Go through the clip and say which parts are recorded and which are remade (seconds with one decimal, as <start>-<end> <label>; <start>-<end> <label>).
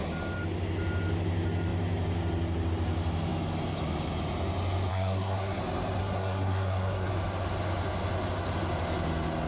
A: 0.0-4.9 recorded; 4.9-5.6 remade; 5.6-6.0 recorded; 6.0-7.1 remade; 7.1-9.5 recorded